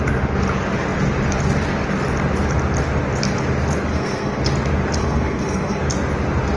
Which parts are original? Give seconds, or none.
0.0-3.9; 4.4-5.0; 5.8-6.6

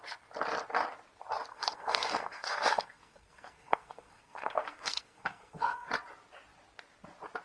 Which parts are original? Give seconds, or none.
0.0-1.5; 5.9-7.4

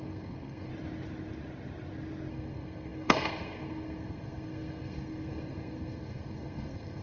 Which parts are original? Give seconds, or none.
0.7-2.3

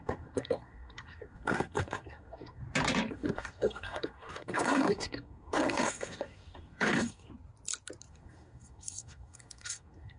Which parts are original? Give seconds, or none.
2.6-3.1; 7.3-8.1